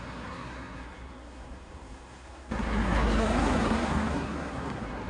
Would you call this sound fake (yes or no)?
yes